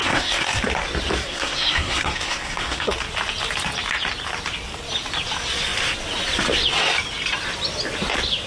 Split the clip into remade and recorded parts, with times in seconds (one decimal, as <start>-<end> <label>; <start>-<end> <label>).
0.0-0.6 remade; 0.6-1.2 recorded; 1.2-2.9 remade; 2.9-8.5 recorded